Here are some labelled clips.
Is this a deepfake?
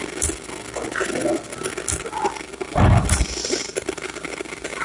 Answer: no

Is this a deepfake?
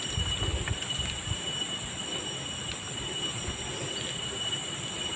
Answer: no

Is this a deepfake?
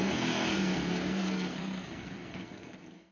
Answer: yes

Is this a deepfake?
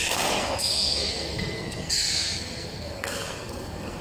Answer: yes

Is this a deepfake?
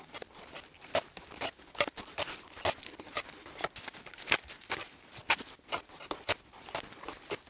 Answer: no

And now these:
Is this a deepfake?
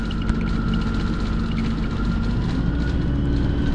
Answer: no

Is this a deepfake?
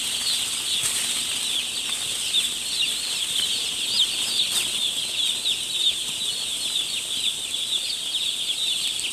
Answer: no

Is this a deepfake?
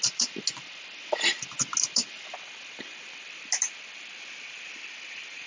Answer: no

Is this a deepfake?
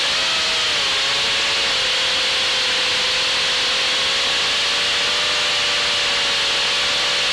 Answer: no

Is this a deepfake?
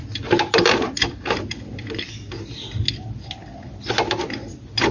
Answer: no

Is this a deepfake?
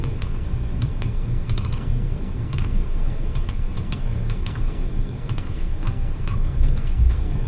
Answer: yes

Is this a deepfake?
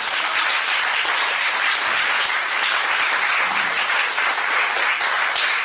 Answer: no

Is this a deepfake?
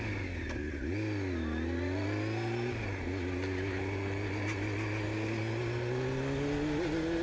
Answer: no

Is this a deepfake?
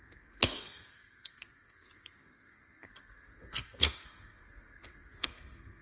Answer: yes